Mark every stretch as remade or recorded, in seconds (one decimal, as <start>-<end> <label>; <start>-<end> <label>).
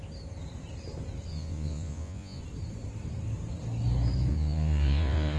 0.0-1.3 recorded; 1.3-2.4 remade; 2.4-4.3 recorded; 4.3-5.4 remade